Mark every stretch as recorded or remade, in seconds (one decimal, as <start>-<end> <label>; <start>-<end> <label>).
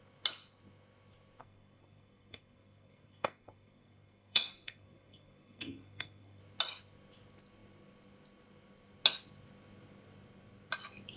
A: 0.0-1.4 recorded; 1.4-6.4 remade; 6.4-11.2 recorded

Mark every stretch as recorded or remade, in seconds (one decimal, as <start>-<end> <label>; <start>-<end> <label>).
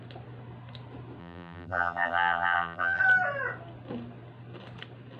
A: 0.0-1.2 recorded; 1.2-3.0 remade; 3.0-5.2 recorded